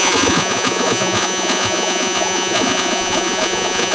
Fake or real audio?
fake